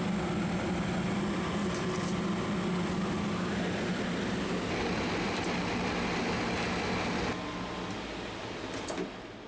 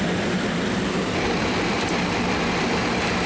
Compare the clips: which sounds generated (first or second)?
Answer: second